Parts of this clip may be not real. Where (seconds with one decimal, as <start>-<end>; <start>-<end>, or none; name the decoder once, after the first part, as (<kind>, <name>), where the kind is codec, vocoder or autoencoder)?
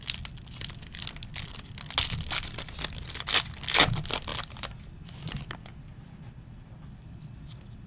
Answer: none